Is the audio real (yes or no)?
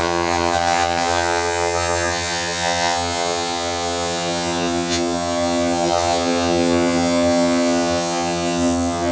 no